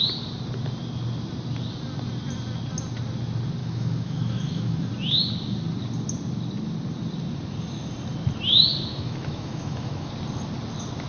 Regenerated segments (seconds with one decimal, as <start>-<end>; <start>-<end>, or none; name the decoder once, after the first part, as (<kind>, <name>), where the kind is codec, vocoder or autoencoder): 3.6-4.9 (autoencoder, DAC-VAE); 8.9-10.1

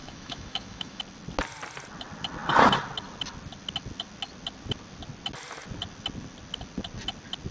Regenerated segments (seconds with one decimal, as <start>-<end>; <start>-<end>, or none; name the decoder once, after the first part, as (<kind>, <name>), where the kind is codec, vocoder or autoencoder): 0.0-1.0 (autoencoder, DAC-VAE)

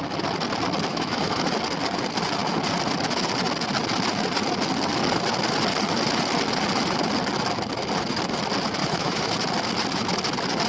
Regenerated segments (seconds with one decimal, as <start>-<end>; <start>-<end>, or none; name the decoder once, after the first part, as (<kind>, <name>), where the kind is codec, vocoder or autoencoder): 0.9-1.5 (autoencoder, DAC-VAE); 8.8-9.3

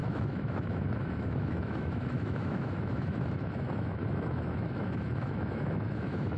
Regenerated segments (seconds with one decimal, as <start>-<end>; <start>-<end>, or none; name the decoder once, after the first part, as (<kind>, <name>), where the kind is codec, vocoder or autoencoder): 0.0-6.4 (autoencoder, DAC-VAE)